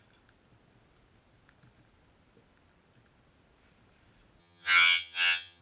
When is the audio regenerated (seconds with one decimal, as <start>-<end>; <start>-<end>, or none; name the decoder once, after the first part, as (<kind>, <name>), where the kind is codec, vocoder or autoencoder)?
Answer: 4.4-5.6 (vocoder, HiFi-GAN)